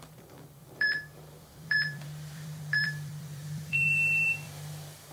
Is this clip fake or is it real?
fake